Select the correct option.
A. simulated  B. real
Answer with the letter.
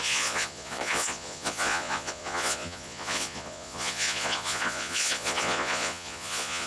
A